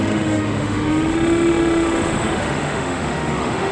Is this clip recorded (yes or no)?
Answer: no